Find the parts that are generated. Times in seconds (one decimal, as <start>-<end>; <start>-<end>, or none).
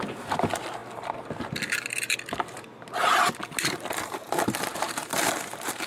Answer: 4.7-5.9